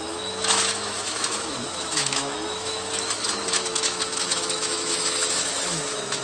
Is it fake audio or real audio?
fake